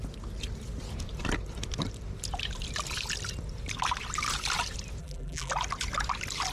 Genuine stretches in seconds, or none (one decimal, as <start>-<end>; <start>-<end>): 0.0-5.0; 5.5-6.5